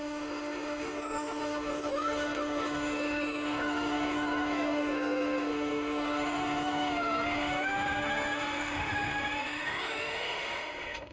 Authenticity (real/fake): fake